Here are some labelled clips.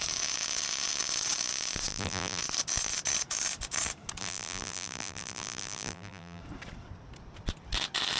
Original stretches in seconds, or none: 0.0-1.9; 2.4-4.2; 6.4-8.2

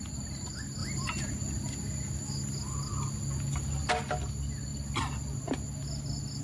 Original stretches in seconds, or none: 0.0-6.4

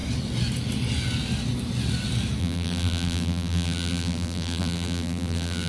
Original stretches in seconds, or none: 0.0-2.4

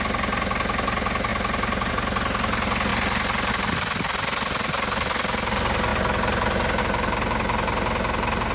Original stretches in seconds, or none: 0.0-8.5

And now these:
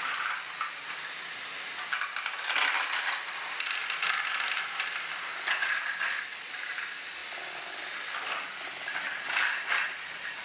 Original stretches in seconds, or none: 7.2-8.1

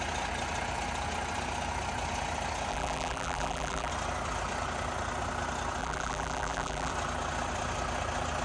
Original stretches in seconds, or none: 0.0-2.7; 3.9-5.8; 6.9-8.4